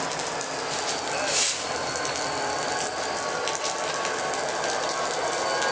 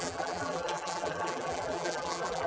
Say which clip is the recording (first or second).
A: first